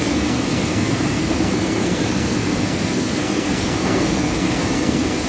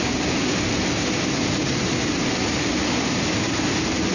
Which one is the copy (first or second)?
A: first